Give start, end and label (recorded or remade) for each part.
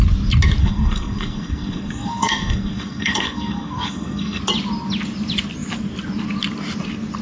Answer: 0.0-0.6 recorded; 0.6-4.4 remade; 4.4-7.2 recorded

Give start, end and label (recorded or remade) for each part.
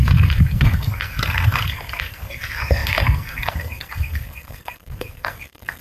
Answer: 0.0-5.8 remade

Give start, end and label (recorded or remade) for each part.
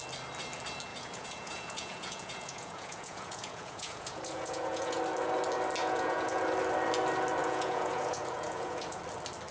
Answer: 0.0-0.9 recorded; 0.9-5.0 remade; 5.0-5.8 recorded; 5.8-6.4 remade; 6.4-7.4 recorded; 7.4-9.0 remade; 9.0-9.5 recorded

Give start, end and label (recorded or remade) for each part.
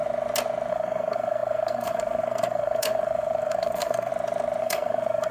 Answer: 0.0-0.7 recorded; 0.7-4.1 remade; 4.1-4.6 recorded; 4.6-5.3 remade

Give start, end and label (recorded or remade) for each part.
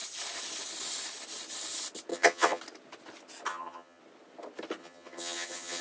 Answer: 0.0-2.1 recorded; 2.1-2.6 remade; 2.6-3.5 recorded; 3.5-4.0 remade; 4.0-4.8 recorded; 4.8-5.8 remade